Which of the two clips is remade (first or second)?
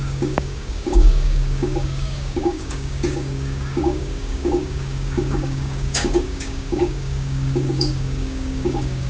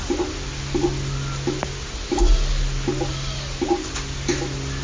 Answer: first